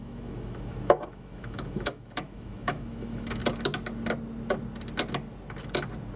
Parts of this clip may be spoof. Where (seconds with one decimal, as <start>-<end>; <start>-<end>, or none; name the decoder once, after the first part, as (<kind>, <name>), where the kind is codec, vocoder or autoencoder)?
0.0-3.4 (autoencoder, DAC-VAE)